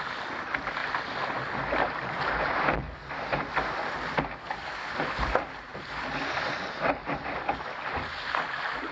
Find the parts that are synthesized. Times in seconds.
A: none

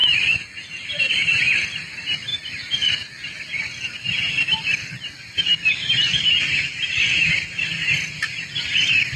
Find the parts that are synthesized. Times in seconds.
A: none

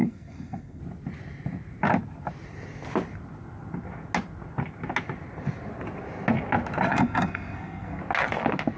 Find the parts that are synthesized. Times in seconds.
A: 0.0-0.8 (codec, SNAC); 6.9-8.0

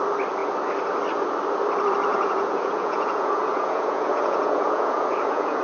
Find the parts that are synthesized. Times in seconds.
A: 2.1-5.6 (vocoder, Vocos)